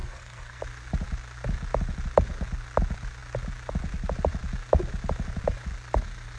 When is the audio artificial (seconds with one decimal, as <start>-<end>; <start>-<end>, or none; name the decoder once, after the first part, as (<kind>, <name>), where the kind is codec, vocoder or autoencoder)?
0.0-0.6 (codec, SNAC)